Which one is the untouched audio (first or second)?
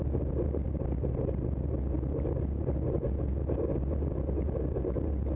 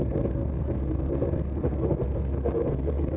first